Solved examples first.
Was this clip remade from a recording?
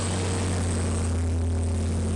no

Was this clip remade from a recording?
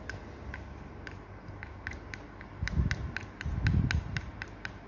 no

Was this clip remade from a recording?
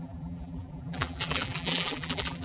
yes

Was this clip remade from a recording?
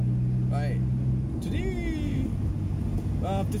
no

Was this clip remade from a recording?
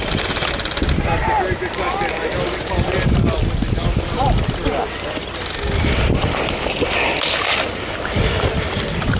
no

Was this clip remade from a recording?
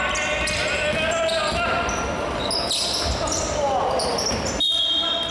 no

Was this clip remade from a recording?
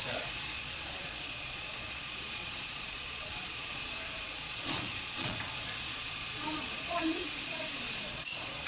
yes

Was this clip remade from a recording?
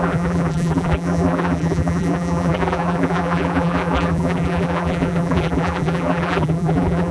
yes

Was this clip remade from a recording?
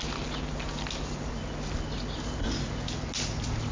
no